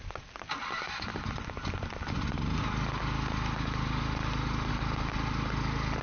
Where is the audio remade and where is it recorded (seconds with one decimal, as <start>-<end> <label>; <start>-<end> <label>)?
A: 0.0-6.0 recorded